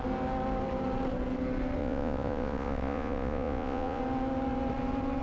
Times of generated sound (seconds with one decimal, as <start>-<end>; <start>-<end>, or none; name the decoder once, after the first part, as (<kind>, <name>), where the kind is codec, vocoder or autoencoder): 1.8-4.0 (vocoder, Vocos)